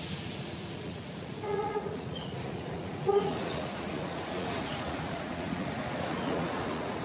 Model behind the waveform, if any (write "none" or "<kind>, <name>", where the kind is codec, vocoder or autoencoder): vocoder, Vocos